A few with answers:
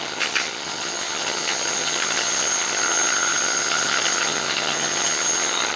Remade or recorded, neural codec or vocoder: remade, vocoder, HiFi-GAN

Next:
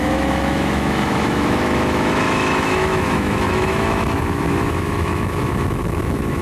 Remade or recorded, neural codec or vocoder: remade, autoencoder, DAC-VAE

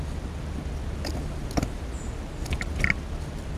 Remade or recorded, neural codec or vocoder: recorded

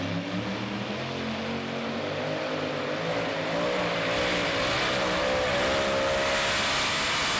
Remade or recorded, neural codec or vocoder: recorded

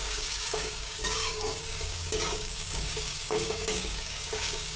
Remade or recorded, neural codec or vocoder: remade, codec, DAC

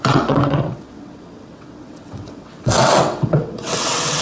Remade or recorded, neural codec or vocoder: remade, vocoder, WaveNeXt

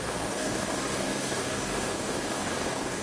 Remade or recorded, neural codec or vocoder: remade, codec, DAC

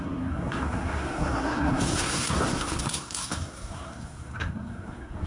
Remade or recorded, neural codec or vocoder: remade, codec, SNAC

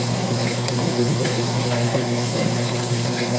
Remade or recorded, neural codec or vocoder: remade, codec, SNAC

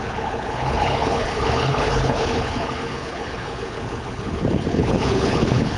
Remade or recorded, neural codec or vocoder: remade, codec, HILCodec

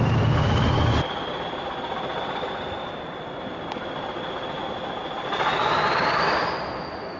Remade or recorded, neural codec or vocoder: recorded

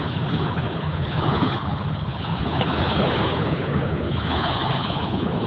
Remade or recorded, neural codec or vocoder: remade, codec, HILCodec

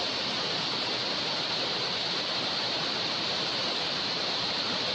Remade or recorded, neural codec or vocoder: remade, vocoder, BigVGAN v2